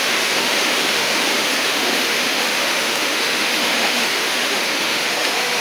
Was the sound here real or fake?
fake